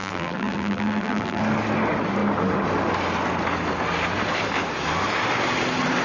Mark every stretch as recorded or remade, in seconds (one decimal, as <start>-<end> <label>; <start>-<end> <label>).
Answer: 0.0-1.4 remade; 1.4-6.0 recorded